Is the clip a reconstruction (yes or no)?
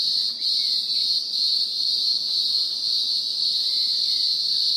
no